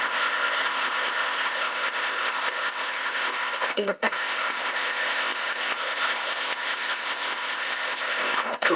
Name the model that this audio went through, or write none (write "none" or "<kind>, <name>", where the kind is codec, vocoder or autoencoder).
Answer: codec, ZipCodec